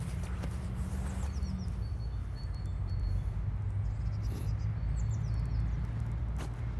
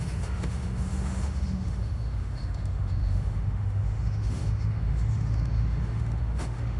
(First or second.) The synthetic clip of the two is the second